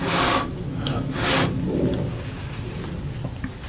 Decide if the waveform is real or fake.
real